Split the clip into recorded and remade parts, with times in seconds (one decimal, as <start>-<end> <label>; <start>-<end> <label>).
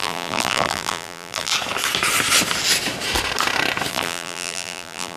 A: 0.0-1.5 remade; 1.5-3.9 recorded; 3.9-5.2 remade